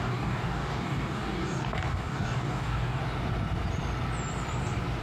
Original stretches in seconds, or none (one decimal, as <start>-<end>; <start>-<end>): 3.0-5.0